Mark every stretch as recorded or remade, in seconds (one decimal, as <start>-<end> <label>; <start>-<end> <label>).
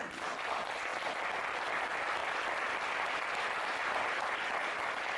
0.0-5.2 recorded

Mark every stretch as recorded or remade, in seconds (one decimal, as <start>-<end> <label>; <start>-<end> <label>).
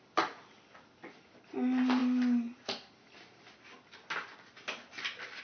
0.0-5.4 recorded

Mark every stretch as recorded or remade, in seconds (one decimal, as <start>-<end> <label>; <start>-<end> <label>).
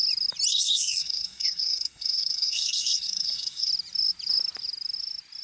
0.0-0.5 recorded; 0.5-3.7 remade; 3.7-5.4 recorded